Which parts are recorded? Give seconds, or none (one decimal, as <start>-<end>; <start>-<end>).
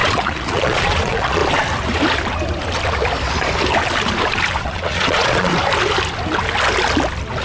1.4-4.6; 5.5-7.4